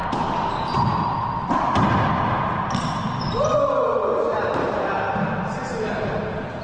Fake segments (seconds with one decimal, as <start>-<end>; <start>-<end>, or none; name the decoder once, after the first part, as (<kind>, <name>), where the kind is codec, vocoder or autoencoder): 4.0-5.0 (vocoder, BigVGAN v2)